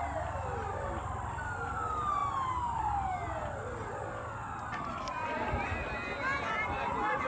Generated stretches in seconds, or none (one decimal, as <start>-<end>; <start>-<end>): none